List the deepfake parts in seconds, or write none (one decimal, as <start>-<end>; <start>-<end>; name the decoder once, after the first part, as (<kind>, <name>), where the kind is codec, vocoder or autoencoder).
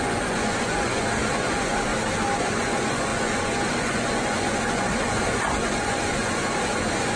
0.0-1.9 (vocoder, Vocos); 2.4-7.2